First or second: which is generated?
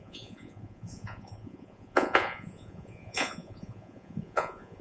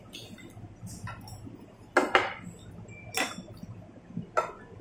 first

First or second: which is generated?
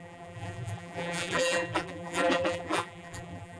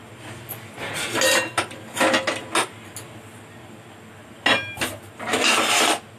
first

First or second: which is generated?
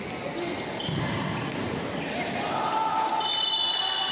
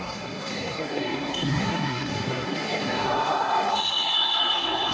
second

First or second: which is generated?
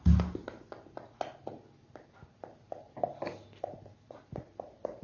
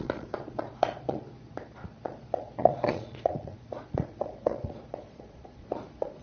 second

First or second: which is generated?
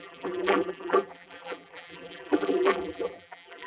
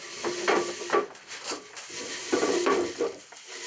first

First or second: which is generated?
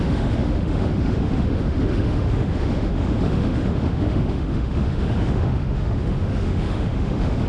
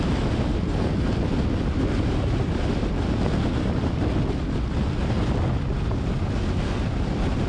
first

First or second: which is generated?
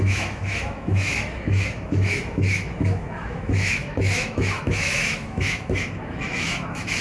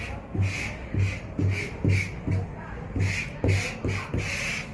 first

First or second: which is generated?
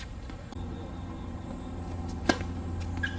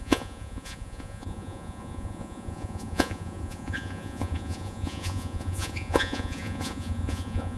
second